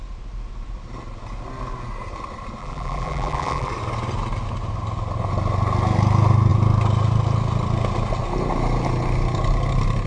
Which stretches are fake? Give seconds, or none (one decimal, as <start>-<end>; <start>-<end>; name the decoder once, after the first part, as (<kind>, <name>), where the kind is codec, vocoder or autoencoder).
2.6-3.7 (vocoder, BigVGAN v2)